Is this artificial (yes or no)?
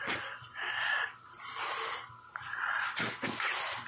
no